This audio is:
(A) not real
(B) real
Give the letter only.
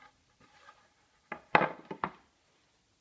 B